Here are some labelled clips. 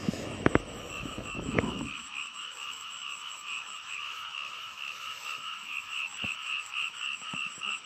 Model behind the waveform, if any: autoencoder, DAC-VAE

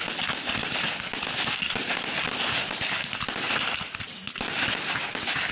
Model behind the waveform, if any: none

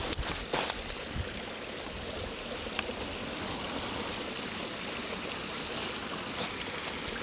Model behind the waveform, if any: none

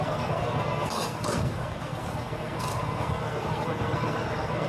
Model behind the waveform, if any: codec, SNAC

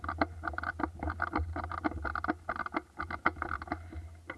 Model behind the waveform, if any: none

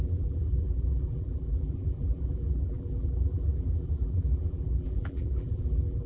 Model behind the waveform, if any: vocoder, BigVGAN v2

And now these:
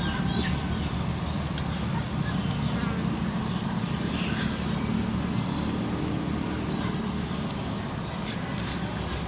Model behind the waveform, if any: none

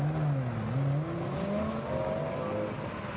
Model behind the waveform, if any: none